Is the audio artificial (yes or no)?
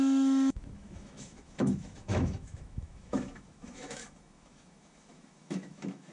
yes